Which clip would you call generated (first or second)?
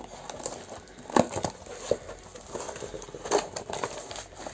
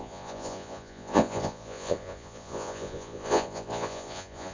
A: second